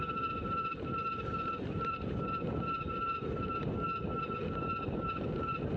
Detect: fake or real real